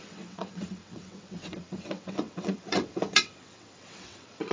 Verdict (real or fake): fake